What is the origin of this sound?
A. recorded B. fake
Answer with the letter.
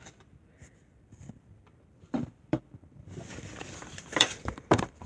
B